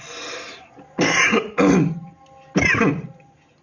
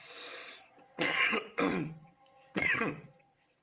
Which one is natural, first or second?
first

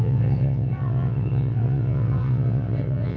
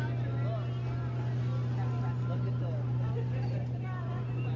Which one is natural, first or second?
second